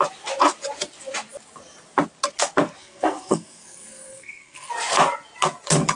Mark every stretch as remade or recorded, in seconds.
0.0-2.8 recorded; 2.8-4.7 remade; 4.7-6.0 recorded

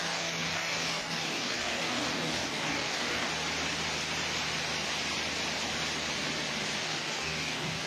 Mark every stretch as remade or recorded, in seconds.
0.0-3.3 remade; 3.3-6.8 recorded; 6.8-7.9 remade

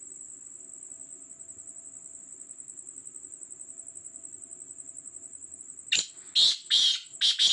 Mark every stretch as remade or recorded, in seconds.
0.0-7.5 recorded

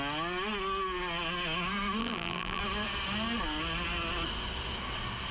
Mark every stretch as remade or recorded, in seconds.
0.0-2.0 recorded; 2.0-2.6 remade; 2.6-5.3 recorded